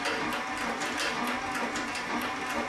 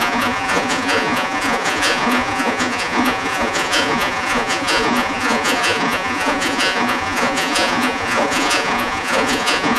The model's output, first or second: second